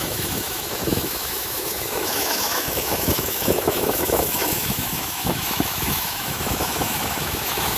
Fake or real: fake